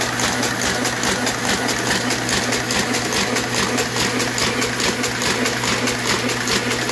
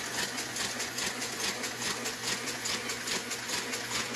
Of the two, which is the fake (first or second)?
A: second